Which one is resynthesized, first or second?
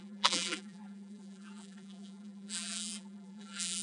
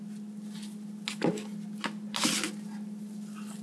first